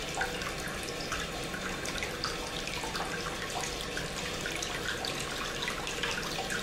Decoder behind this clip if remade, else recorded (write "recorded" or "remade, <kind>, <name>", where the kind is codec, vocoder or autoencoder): recorded